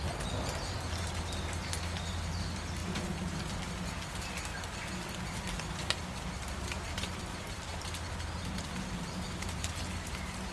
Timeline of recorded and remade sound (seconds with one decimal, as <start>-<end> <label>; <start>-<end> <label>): 0.0-10.5 recorded